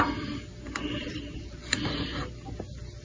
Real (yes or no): yes